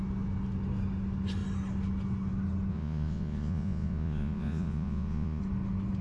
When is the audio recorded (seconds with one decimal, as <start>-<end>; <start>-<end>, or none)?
0.0-2.7; 5.4-6.0